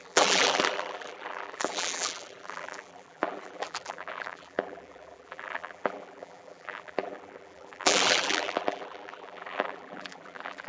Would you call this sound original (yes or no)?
no